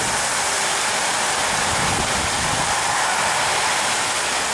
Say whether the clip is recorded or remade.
recorded